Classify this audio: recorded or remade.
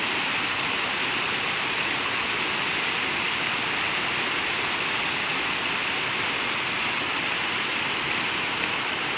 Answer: recorded